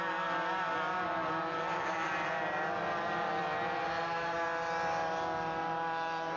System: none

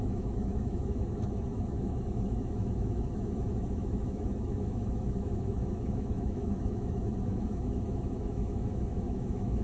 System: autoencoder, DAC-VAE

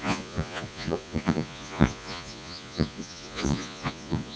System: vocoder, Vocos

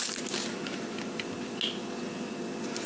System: none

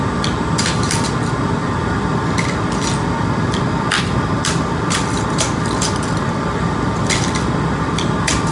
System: none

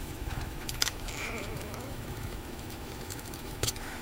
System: autoencoder, DAC-VAE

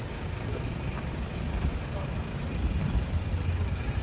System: none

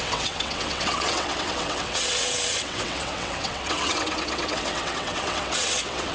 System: vocoder, WaveNeXt